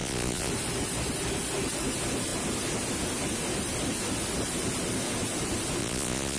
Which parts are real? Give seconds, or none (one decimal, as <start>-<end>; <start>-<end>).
0.5-5.8